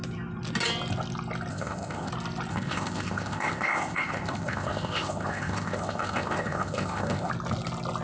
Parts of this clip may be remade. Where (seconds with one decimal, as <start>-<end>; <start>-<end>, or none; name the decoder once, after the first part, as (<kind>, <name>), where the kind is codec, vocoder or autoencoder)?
1.5-2.1 (codec, ZipCodec); 2.5-7.3